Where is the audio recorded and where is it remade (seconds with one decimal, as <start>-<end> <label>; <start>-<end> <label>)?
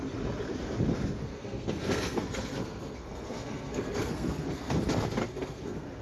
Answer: 0.0-1.2 recorded; 1.2-4.8 remade; 4.8-5.2 recorded; 5.2-6.0 remade